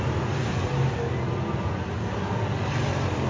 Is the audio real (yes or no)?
yes